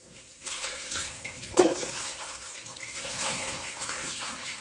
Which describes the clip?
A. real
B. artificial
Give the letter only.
B